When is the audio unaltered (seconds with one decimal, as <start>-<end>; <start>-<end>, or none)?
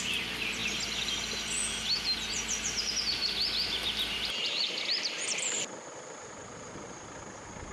0.0-2.8; 7.2-7.7